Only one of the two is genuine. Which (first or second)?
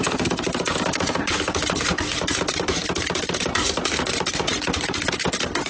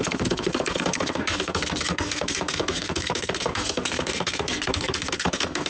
first